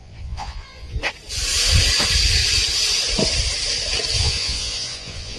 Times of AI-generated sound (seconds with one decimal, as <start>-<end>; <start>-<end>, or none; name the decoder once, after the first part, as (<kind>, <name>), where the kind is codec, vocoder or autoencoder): 0.0-1.0 (vocoder, Vocos); 4.2-5.4

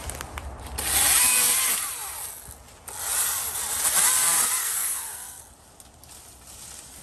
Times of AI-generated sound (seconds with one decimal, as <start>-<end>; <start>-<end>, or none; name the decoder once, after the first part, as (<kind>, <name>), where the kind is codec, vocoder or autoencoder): 4.6-5.4 (codec, SNAC)

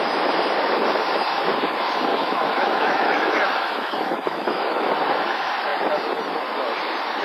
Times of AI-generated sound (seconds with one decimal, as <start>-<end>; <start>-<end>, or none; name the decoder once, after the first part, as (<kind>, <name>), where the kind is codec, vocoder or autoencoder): 2.1-4.9 (autoencoder, DAC-VAE)

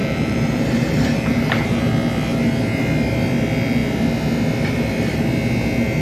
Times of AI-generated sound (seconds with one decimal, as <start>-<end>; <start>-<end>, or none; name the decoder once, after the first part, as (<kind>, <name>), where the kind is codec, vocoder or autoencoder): 0.0-1.9 (vocoder, BigVGAN v2)

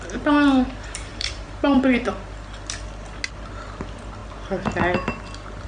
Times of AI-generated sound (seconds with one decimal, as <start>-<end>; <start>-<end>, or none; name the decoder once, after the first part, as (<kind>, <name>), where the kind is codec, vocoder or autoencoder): 1.1-2.1 (vocoder, BigVGAN v2)